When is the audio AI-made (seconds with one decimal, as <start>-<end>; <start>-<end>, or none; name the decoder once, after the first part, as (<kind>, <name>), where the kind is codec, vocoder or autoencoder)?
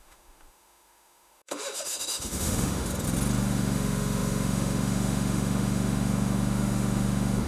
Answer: 0.0-2.9 (autoencoder, DAC-VAE); 3.4-7.5